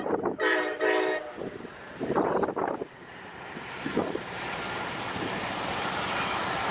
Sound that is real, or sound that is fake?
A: fake